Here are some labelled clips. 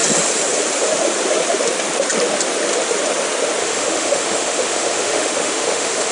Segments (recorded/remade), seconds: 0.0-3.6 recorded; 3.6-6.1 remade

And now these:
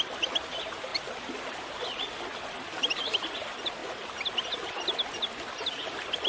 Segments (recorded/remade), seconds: 0.0-6.3 recorded

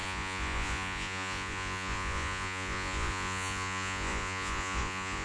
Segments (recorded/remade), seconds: 0.0-5.2 remade

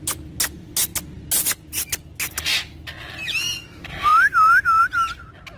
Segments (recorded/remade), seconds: 0.0-5.6 recorded

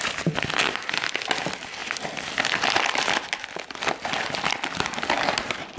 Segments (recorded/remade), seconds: 0.0-5.8 recorded